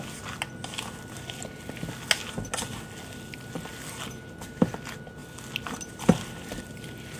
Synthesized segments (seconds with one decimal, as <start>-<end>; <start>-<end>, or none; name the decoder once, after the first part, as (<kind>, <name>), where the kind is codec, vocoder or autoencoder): none